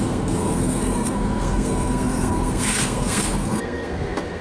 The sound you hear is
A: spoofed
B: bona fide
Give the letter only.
A